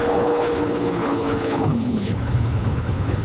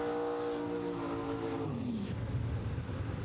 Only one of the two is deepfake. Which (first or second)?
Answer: first